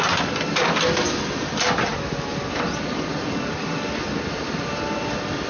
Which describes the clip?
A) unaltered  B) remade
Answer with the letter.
A